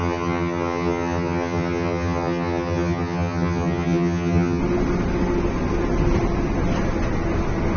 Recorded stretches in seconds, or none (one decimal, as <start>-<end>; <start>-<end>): 4.6-7.8